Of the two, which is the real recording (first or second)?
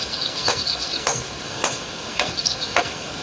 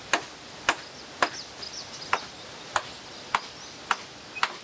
second